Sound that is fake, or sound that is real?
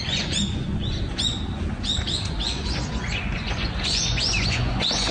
fake